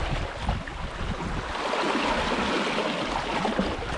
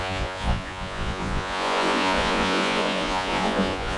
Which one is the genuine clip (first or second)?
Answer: first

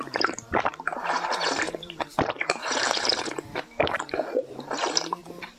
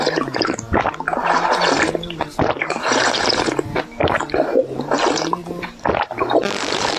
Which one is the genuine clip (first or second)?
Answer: second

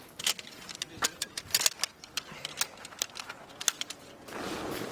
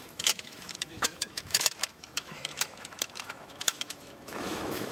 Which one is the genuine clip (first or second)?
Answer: first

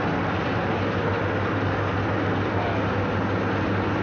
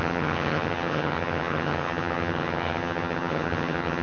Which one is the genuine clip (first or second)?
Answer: first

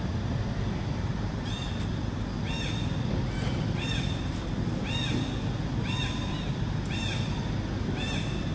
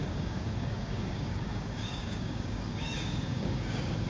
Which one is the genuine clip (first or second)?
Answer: first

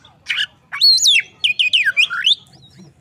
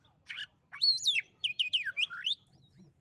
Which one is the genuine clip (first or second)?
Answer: first